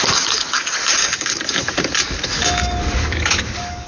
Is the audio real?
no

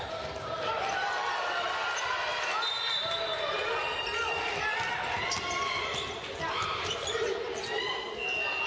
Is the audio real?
yes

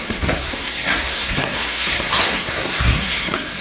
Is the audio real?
no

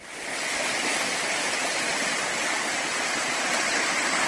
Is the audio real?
yes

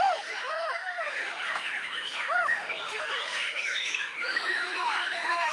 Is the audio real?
no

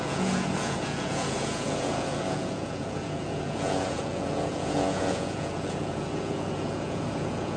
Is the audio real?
no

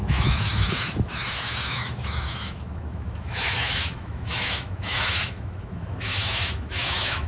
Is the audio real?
no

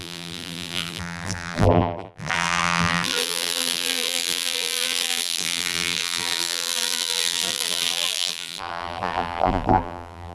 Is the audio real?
no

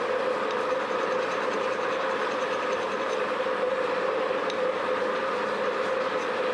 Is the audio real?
no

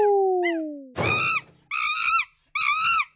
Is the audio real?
yes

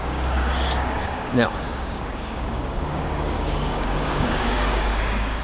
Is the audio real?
no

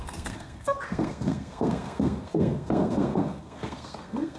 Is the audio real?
no